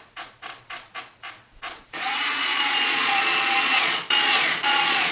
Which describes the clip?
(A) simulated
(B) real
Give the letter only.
A